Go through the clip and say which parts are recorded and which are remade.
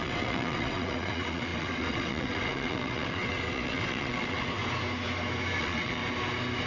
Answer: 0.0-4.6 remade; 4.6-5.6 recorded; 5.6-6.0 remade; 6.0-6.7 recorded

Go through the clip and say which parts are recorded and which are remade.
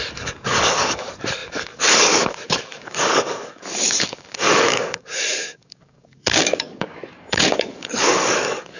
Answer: 0.0-8.8 remade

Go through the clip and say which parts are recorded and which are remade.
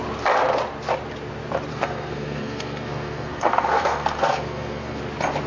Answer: 0.0-1.7 recorded; 1.7-5.0 remade; 5.0-5.5 recorded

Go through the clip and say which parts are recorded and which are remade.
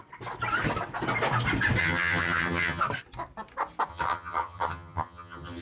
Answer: 0.0-1.8 recorded; 1.8-2.8 remade; 2.8-3.9 recorded; 3.9-5.6 remade